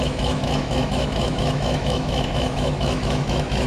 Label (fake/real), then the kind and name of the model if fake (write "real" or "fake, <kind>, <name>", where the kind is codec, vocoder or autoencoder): fake, autoencoder, DAC-VAE